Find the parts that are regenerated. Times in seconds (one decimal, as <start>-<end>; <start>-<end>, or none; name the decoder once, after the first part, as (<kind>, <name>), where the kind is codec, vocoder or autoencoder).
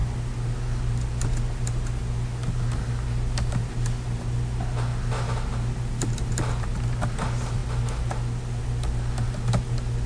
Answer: none